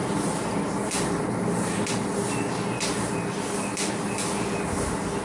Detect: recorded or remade recorded